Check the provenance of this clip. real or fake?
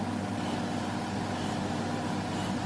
real